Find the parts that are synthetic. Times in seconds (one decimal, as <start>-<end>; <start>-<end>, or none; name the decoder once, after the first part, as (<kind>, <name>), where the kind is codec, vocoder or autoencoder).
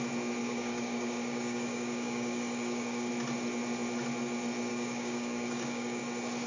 0.4-3.1 (codec, DAC); 4.7-6.0